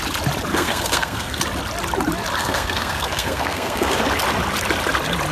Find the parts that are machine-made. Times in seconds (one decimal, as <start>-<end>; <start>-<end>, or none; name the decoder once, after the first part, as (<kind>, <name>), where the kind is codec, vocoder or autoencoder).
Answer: 0.5-1.4 (codec, SNAC); 2.4-4.0

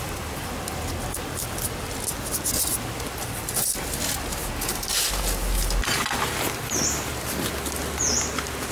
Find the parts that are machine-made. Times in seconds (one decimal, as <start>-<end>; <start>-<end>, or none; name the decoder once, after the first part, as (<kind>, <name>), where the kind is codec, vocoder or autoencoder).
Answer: none

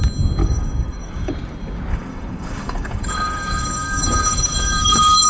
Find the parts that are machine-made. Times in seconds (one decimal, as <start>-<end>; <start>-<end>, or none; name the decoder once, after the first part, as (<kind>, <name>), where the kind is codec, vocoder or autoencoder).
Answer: 0.4-1.3 (codec, DAC); 1.9-5.3

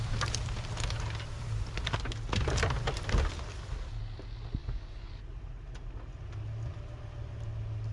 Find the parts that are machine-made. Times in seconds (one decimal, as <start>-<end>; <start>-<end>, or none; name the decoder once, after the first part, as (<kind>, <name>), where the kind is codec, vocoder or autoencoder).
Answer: 4.6-5.1 (codec, DAC)

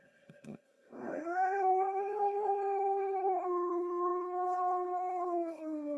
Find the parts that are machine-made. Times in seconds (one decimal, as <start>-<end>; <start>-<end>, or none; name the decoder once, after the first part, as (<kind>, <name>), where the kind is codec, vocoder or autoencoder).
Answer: 0.0-6.0 (codec, SNAC)